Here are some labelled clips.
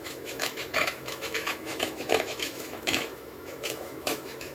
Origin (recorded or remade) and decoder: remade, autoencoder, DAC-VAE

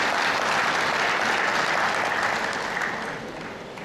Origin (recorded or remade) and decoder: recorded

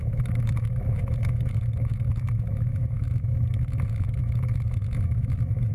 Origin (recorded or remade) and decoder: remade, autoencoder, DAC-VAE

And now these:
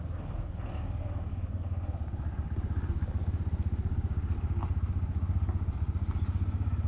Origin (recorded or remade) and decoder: recorded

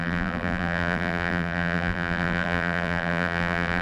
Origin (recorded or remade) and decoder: remade, vocoder, BigVGAN v2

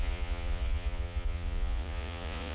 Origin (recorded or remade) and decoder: remade, vocoder, Vocos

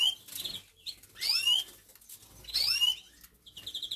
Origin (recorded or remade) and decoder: recorded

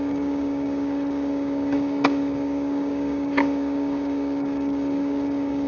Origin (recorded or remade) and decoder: remade, codec, DAC